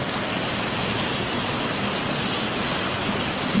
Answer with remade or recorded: recorded